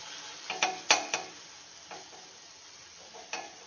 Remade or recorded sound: recorded